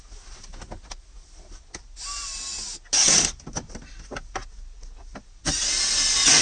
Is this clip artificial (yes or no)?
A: no